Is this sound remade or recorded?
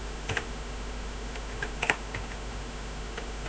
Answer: remade